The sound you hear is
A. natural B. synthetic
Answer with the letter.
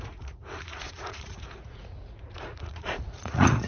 B